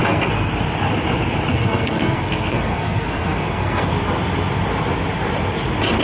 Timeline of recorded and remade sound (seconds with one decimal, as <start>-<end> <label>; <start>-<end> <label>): 0.0-0.5 remade; 0.5-1.5 recorded; 1.5-3.9 remade; 3.9-6.0 recorded